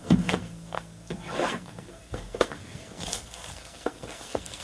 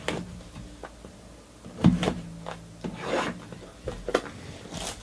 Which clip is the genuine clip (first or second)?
second